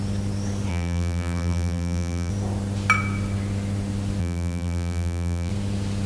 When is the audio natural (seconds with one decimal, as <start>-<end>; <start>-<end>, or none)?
0.0-0.7; 2.3-4.2; 5.5-6.1